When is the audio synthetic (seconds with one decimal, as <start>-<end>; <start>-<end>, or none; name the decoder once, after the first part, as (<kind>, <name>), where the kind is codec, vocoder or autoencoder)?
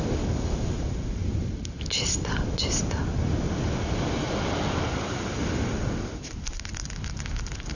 none